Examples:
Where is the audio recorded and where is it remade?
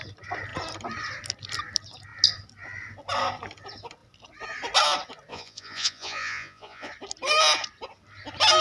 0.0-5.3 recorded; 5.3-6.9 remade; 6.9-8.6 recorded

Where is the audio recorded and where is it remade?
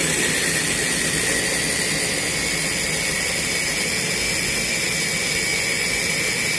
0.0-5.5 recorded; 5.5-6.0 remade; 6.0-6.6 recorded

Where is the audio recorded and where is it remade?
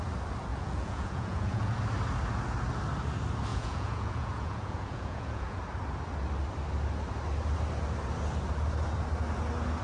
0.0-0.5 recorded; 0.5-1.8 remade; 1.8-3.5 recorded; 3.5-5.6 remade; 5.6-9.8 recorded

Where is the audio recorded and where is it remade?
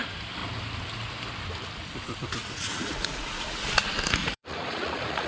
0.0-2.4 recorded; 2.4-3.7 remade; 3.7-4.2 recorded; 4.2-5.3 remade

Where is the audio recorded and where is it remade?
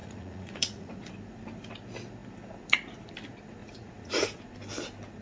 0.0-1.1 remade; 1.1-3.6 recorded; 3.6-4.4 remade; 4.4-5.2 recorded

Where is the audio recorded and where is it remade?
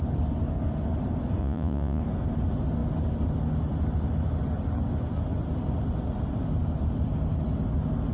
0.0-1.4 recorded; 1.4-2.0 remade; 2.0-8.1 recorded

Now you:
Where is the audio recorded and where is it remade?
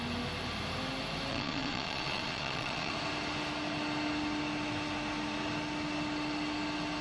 0.0-1.3 recorded; 1.3-2.9 remade; 2.9-7.0 recorded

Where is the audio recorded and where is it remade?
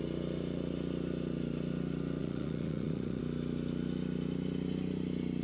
0.0-2.2 recorded; 2.2-3.2 remade; 3.2-5.4 recorded